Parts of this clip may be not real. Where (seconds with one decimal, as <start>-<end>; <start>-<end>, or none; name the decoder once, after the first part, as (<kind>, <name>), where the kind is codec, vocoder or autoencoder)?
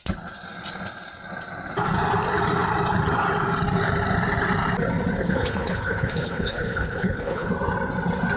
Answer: 5.2-7.5 (codec, HILCodec)